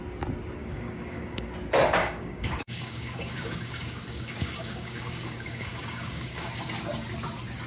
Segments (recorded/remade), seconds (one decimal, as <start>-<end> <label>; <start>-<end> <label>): 0.0-0.6 recorded; 0.6-1.5 remade; 1.5-2.0 recorded; 2.0-6.6 remade; 6.6-7.7 recorded